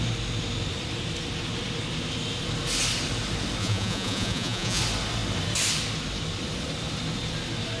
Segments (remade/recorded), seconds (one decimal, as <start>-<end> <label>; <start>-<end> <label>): 0.0-3.6 recorded; 3.6-4.8 remade; 4.8-7.8 recorded